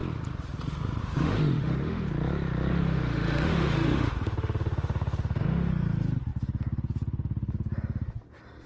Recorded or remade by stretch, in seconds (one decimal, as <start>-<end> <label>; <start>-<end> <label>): 0.0-1.0 recorded; 1.0-2.1 remade; 2.1-2.7 recorded; 2.7-5.7 remade; 5.7-8.7 recorded